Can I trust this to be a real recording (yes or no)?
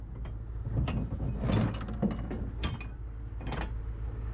yes